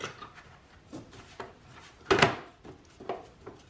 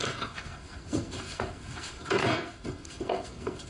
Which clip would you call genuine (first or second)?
first